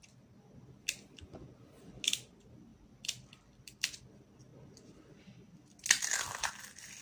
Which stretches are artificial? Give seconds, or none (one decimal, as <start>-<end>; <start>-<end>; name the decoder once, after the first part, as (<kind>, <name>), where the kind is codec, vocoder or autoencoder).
2.7-4.0 (vocoder, BigVGAN v2)